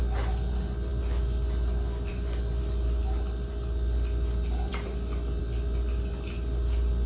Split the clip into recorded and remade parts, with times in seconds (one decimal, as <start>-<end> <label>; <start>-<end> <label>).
0.0-7.1 recorded